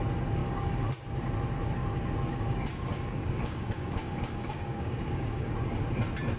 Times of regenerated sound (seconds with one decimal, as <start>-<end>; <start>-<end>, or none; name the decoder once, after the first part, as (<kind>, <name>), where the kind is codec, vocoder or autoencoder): 0.4-0.9 (codec, DAC); 2.3-5.5